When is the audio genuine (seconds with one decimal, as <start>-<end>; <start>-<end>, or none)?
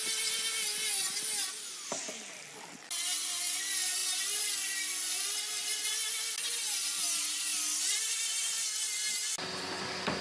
0.0-10.2